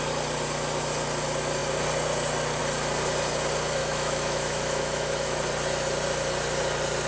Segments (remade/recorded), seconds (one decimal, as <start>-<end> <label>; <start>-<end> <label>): 0.0-3.8 recorded; 3.8-5.4 remade; 5.4-7.1 recorded